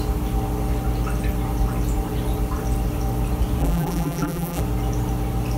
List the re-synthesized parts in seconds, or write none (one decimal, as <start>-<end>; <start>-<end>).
3.6-4.6